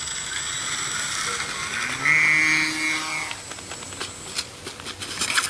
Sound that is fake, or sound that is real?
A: real